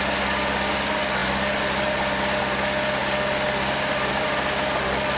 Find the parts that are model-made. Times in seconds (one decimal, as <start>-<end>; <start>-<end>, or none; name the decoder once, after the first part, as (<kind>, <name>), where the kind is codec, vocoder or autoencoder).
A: none